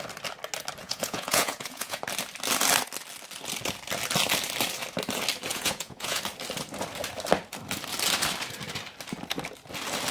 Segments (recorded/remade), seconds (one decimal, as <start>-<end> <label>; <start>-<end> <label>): 0.0-0.8 recorded; 0.8-2.0 remade; 2.0-5.5 recorded; 5.5-6.2 remade; 6.2-10.1 recorded